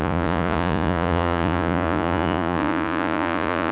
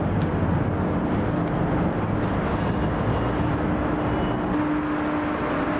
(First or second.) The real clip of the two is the second